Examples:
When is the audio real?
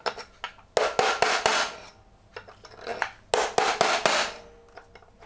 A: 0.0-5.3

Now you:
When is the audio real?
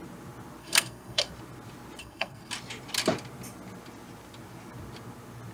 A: 0.0-0.6; 1.3-2.0; 2.5-5.5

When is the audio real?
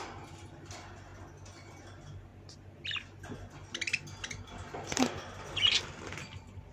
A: 0.0-6.7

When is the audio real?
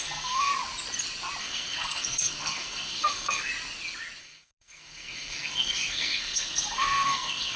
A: 0.5-1.4; 3.5-4.2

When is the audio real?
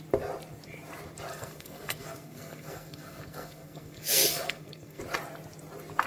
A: 0.0-1.3; 5.0-6.1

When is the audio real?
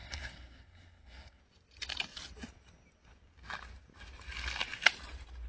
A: 1.4-5.5